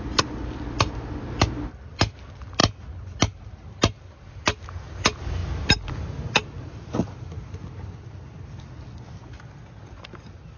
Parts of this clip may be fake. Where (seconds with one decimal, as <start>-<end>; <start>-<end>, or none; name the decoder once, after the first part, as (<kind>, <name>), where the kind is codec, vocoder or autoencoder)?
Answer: none